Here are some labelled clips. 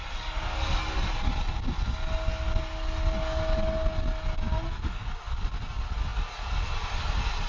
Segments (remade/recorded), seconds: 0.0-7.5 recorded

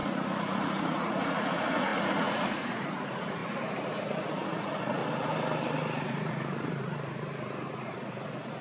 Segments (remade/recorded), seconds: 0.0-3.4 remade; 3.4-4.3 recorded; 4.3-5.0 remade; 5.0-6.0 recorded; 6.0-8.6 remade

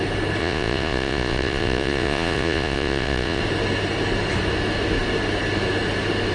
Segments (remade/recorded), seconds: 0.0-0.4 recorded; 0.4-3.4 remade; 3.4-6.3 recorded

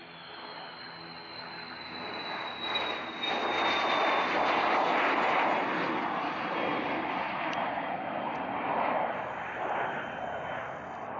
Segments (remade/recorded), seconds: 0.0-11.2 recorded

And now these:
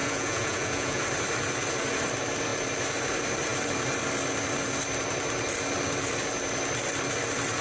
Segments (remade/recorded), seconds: 0.0-1.0 remade; 1.0-7.6 recorded